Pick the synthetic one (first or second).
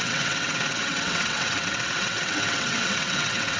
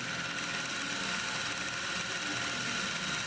first